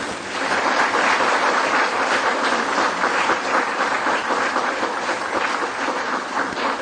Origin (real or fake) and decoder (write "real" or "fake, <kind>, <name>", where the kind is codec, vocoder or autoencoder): real